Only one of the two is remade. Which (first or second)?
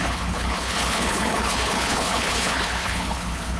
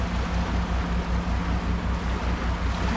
first